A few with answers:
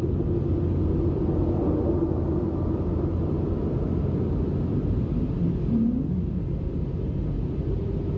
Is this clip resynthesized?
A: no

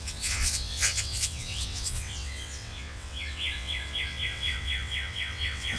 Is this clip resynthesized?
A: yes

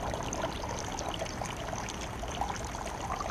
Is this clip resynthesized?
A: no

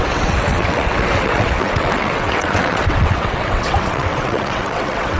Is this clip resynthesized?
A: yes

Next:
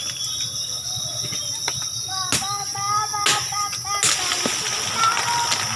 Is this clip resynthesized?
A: no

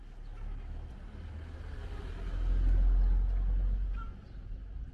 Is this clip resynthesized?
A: no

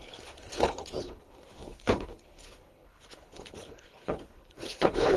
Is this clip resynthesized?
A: yes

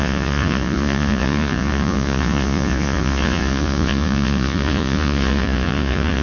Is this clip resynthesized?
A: yes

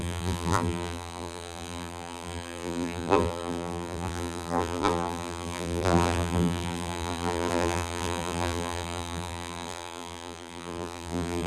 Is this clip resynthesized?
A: yes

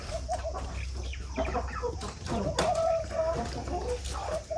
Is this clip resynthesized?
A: no